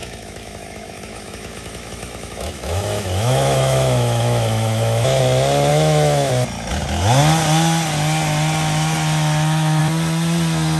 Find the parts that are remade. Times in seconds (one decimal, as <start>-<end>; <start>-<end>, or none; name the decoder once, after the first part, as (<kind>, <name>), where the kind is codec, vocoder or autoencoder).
0.0-5.2 (autoencoder, DAC-VAE); 5.7-6.3